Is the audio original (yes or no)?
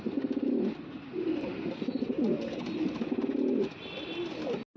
yes